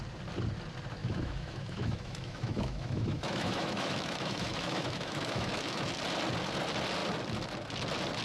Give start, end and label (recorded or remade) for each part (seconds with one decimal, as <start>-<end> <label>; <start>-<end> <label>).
0.0-1.0 recorded; 1.0-5.9 remade; 5.9-8.2 recorded